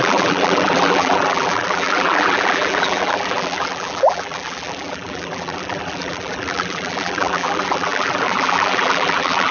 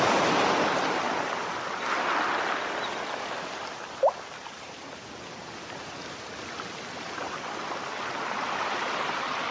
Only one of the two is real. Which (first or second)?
second